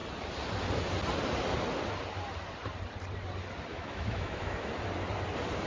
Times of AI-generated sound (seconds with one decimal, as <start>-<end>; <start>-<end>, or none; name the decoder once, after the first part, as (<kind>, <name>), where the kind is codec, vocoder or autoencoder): 3.7-4.7 (autoencoder, DAC-VAE)